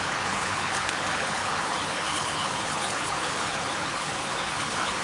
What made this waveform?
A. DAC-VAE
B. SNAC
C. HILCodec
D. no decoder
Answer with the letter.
C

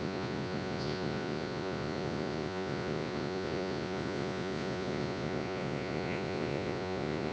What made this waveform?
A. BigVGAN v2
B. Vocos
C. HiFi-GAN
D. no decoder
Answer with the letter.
B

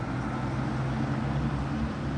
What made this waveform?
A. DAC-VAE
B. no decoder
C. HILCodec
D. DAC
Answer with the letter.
B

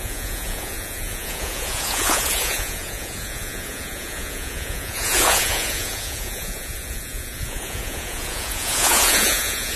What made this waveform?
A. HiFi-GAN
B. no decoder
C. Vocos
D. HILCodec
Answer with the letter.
C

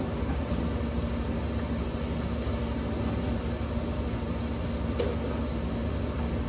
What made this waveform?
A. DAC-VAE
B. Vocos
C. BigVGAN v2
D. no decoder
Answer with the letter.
D